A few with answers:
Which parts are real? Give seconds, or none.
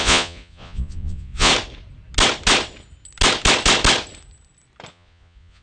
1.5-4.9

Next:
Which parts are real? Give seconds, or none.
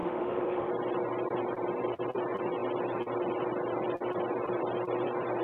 0.7-5.4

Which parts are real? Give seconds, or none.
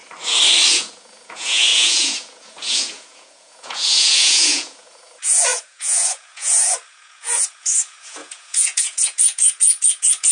0.0-0.7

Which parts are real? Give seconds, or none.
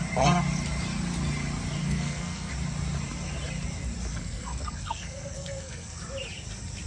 0.0-1.8; 2.5-4.1; 6.0-6.9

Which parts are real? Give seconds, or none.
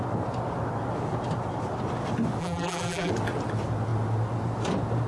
0.0-2.4; 3.1-5.1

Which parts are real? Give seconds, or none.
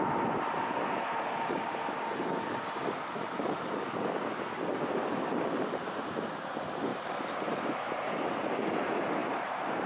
0.0-6.9; 8.0-9.2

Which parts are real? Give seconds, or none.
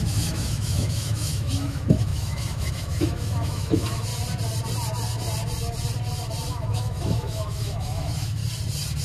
4.1-6.5; 8.4-9.0